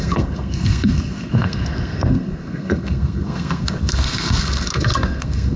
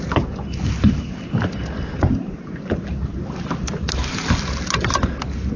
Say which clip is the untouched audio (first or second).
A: second